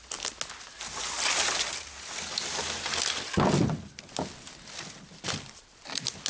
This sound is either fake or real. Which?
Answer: real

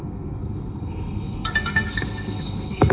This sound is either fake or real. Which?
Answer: fake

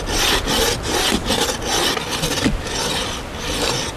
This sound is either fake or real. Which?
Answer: real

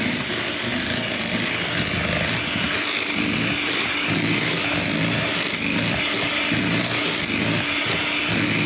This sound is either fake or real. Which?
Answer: real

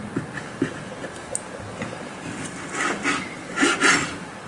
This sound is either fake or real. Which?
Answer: real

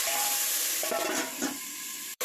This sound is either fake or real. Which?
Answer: fake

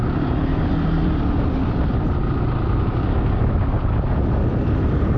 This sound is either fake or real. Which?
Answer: real